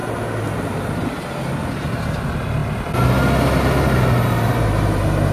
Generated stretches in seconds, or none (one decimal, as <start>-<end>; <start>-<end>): none